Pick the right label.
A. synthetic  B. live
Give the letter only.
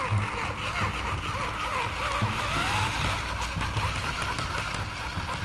B